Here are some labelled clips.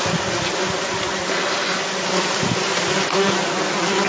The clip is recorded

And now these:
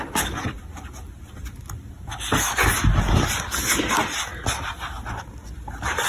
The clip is recorded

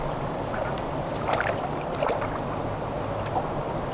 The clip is recorded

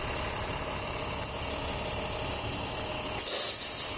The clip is recorded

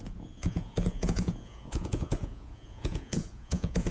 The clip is remade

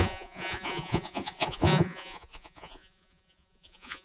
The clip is remade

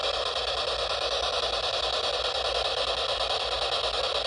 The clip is recorded